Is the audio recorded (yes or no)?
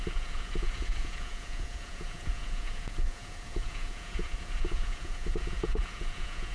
no